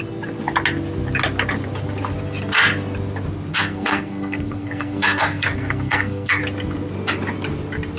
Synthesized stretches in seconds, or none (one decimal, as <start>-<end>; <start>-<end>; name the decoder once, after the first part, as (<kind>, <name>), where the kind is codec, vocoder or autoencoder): 3.5-6.4 (codec, SNAC)